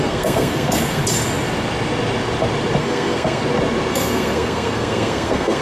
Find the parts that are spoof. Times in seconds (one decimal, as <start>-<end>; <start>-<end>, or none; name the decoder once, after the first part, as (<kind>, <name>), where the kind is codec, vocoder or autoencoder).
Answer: 0.0-1.0 (codec, SNAC); 2.8-3.4; 3.9-5.6